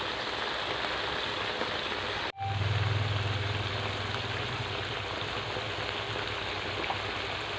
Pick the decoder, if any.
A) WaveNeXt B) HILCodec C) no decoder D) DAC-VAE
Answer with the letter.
C